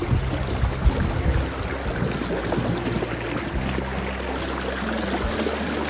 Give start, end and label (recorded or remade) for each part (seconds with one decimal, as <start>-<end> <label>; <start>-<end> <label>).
0.0-5.9 recorded